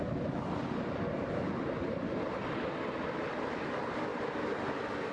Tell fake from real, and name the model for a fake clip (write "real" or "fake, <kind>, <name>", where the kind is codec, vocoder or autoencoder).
real